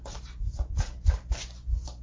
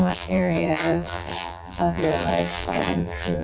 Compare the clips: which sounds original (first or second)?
first